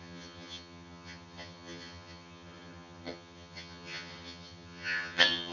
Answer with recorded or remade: remade